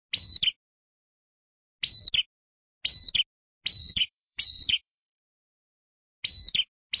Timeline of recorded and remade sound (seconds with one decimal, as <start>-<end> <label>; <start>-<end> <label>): 0.0-3.8 recorded; 3.8-5.2 remade; 5.2-7.0 recorded